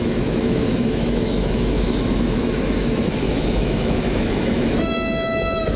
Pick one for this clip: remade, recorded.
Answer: remade